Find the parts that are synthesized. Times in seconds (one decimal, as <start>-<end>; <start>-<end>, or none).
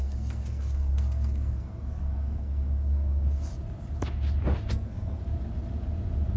0.0-3.5; 4.7-5.2